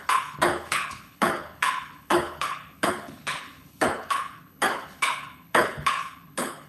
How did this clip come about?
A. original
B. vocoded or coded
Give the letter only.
B